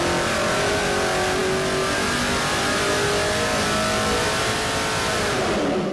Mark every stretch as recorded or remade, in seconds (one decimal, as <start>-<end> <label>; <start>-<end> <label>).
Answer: 0.0-5.9 recorded